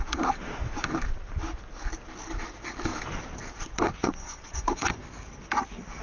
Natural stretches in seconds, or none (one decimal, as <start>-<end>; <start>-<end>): 0.0-4.0; 5.0-6.0